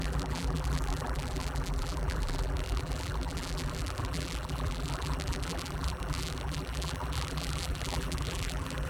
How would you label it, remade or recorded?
remade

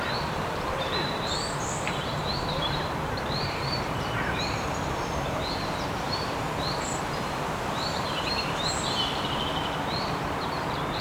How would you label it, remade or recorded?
remade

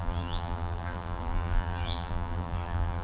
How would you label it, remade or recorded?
remade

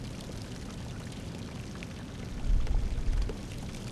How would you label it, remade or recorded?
recorded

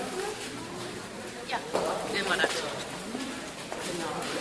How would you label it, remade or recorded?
recorded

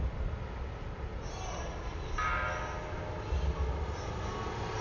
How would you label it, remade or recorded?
recorded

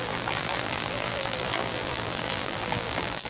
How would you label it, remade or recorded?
remade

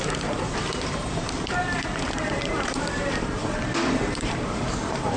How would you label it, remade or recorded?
remade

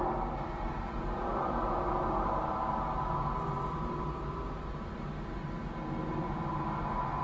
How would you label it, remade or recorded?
recorded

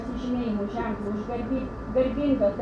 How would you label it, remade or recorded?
recorded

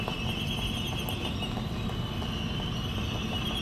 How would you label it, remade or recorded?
recorded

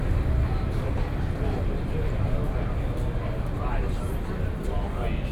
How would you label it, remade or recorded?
recorded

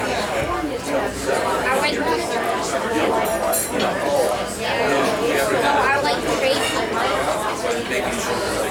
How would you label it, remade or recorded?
remade